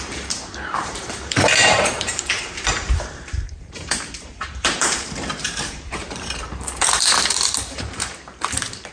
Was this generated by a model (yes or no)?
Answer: yes